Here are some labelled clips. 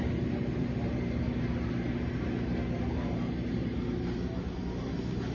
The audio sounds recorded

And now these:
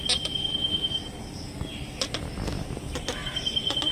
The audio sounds recorded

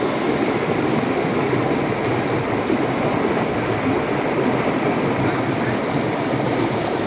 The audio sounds recorded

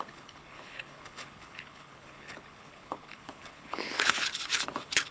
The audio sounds remade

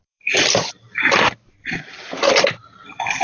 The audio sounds remade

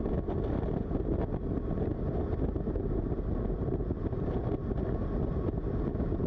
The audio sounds recorded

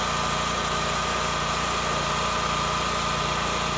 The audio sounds recorded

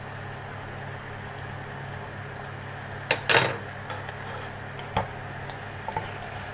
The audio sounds recorded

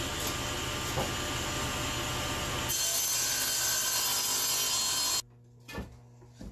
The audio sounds recorded